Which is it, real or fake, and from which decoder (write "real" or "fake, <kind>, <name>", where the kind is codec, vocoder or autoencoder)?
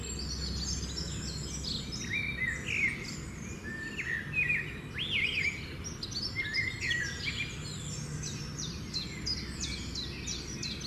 real